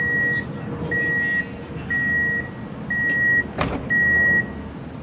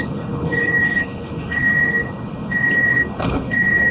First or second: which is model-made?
second